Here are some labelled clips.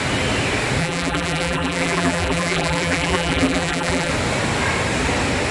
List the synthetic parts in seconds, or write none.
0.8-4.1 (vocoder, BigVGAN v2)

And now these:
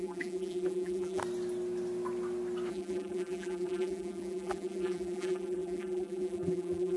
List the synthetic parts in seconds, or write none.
0.0-1.2 (vocoder, BigVGAN v2); 2.7-7.0

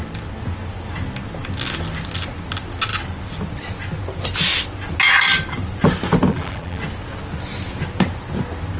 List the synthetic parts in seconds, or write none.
6.3-6.8 (vocoder, BigVGAN v2)

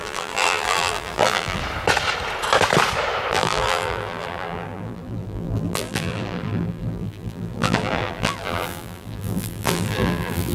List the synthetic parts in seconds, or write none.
0.0-1.6 (vocoder, BigVGAN v2); 3.3-10.5